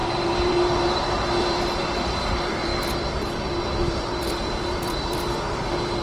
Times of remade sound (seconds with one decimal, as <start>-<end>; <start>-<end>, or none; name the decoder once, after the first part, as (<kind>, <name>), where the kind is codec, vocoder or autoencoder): 0.0-2.7 (vocoder, BigVGAN v2); 3.8-6.0